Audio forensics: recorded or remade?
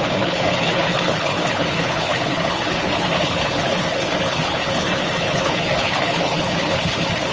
remade